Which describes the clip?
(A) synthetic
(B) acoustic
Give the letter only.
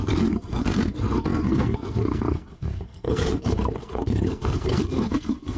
A